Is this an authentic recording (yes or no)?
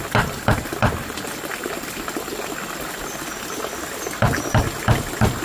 yes